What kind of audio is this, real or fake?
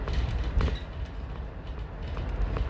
real